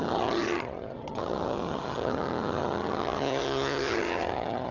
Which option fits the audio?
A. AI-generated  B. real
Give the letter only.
A